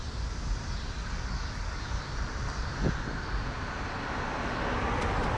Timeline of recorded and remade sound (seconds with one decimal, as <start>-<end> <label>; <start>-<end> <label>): 0.0-1.0 recorded; 1.0-1.9 remade; 1.9-5.4 recorded

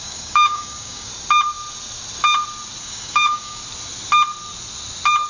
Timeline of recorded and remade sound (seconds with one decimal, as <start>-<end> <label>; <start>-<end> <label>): 0.0-1.1 remade; 1.1-2.8 recorded; 2.8-3.6 remade; 3.6-5.3 recorded

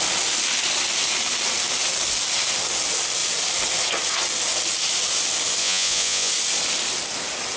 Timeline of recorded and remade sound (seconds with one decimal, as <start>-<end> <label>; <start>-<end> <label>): 0.0-5.6 recorded; 5.6-6.3 remade; 6.3-7.6 recorded

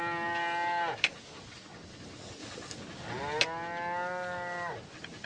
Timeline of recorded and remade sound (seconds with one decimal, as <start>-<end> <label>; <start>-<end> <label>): 0.0-5.3 recorded

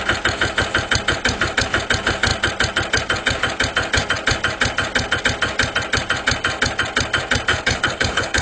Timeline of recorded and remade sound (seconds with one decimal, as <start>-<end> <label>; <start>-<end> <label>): 0.0-7.5 recorded; 7.5-8.4 remade

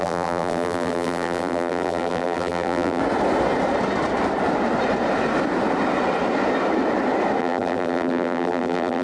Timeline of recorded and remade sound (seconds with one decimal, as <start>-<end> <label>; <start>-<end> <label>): 0.0-3.0 remade; 3.0-7.4 recorded; 7.4-9.0 remade

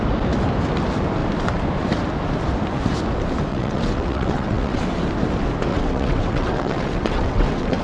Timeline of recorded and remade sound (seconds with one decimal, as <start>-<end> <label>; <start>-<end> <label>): 0.0-3.5 recorded; 3.5-4.8 remade; 4.8-5.7 recorded; 5.7-7.8 remade